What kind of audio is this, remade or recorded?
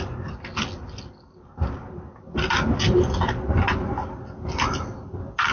recorded